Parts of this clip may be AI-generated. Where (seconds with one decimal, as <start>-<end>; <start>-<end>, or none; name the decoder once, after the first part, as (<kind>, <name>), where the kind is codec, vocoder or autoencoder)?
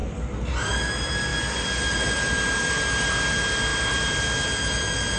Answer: none